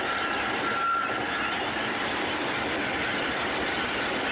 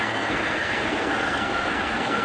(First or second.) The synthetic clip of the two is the second